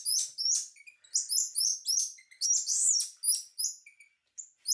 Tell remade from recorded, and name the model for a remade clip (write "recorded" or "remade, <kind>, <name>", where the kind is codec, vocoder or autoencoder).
recorded